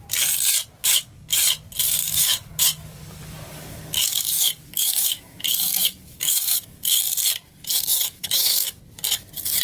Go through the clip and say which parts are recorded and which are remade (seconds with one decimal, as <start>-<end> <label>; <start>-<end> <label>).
0.0-0.8 recorded; 0.8-1.4 remade; 1.4-2.0 recorded; 2.0-7.0 remade; 7.0-7.7 recorded; 7.7-8.8 remade; 8.8-9.6 recorded